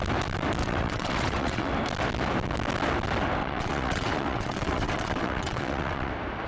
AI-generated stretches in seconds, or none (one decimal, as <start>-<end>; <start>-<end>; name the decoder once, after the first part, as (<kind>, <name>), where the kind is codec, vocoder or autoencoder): 0.6-1.7 (vocoder, WaveNeXt); 3.4-6.1